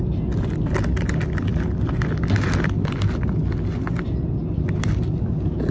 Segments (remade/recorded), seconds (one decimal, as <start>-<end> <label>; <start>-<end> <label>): 0.0-5.7 recorded